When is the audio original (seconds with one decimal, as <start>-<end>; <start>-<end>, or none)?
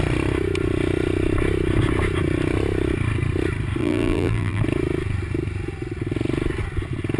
0.0-3.8; 4.6-7.2